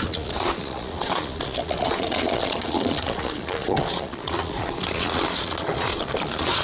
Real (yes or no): no